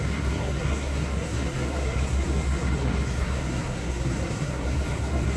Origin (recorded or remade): remade